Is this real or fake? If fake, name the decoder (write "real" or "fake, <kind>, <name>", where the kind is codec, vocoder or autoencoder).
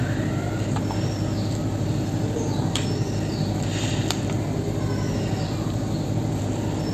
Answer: real